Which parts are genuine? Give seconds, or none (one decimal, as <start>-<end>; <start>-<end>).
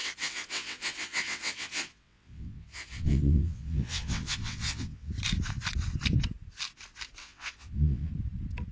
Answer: 5.1-7.2; 8.1-8.7